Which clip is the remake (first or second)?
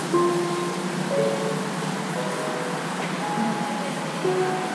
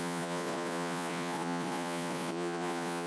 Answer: second